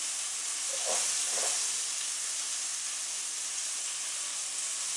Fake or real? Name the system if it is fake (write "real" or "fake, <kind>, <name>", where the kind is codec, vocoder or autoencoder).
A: real